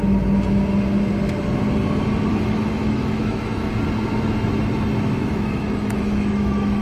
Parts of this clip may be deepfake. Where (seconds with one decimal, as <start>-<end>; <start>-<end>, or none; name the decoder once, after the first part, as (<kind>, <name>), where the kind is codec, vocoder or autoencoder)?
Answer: 2.3-3.7 (autoencoder, DAC-VAE); 5.2-6.8

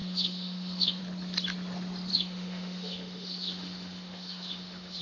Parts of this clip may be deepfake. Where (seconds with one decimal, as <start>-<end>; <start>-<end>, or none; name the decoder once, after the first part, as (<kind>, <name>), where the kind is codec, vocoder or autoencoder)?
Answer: 0.0-1.0 (autoencoder, DAC-VAE); 2.1-5.0

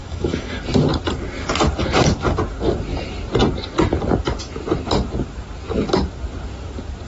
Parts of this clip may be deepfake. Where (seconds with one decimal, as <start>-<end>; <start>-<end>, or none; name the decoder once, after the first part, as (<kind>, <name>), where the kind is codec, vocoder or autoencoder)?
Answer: 0.0-0.6 (autoencoder, DAC-VAE)

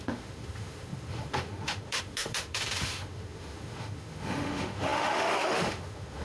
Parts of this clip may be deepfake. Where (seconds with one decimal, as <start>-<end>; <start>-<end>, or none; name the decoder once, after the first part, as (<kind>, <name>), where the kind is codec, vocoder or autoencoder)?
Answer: 0.0-6.2 (autoencoder, DAC-VAE)

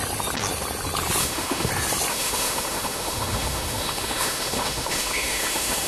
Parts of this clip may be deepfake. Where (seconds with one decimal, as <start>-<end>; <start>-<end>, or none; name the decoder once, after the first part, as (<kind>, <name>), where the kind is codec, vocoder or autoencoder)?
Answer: 1.2-1.7 (autoencoder, DAC-VAE); 2.1-5.9

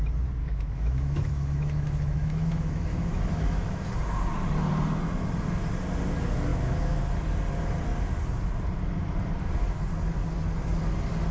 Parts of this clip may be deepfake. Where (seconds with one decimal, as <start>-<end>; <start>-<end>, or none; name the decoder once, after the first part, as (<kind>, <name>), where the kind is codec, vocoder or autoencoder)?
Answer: 0.4-3.9 (autoencoder, DAC-VAE); 6.5-7.0

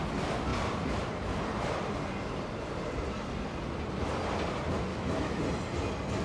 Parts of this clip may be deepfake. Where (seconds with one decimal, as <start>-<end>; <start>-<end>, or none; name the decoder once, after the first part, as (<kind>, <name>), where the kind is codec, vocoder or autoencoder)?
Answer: 4.9-5.4 (autoencoder, DAC-VAE)